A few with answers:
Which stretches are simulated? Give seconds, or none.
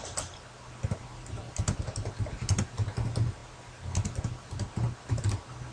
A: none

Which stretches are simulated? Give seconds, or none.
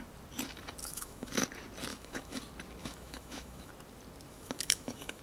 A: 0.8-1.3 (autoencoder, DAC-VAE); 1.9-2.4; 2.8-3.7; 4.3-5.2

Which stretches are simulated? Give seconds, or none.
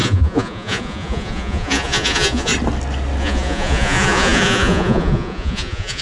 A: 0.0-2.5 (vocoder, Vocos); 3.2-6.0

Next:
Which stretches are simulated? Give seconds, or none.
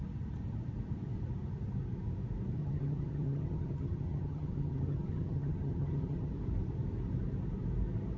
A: 2.6-6.3 (vocoder, HiFi-GAN)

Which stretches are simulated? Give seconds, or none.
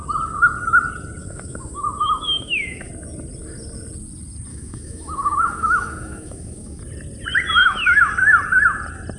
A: 1.2-2.9 (autoencoder, DAC-VAE); 4.5-6.8; 7.6-8.1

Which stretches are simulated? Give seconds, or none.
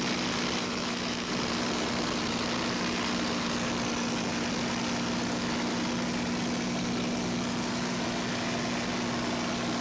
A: 0.6-1.3 (autoencoder, DAC-VAE)